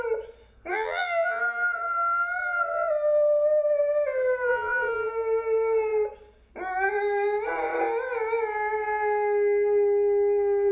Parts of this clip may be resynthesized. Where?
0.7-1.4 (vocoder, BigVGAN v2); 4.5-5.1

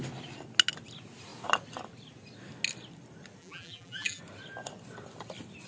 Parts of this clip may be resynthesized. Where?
3.4-4.2 (vocoder, BigVGAN v2)

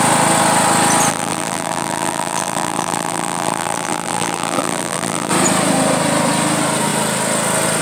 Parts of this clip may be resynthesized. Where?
1.1-5.3 (vocoder, BigVGAN v2)